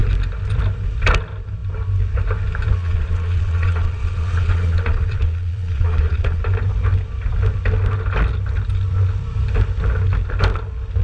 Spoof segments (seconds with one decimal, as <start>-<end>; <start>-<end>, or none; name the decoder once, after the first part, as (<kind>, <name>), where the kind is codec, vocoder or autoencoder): 2.8-6.4 (vocoder, Vocos)